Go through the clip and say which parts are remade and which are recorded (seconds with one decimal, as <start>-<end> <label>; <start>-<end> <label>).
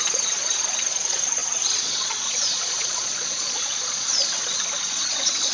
0.0-4.2 remade; 4.2-4.8 recorded; 4.8-5.5 remade